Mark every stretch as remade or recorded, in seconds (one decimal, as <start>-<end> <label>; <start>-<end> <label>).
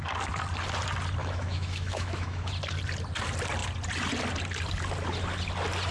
0.0-1.2 recorded; 1.2-2.5 remade; 2.5-5.9 recorded